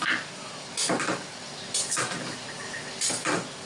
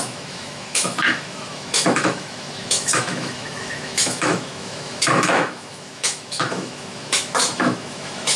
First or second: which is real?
first